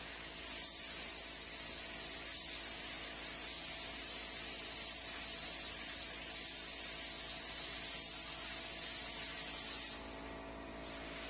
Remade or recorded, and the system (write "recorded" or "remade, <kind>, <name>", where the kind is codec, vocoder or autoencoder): recorded